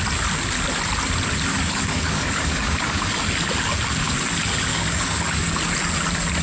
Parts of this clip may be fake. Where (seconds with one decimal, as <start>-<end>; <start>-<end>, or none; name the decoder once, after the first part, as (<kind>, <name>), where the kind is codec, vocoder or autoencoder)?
1.5-3.1 (codec, DAC); 4.7-5.6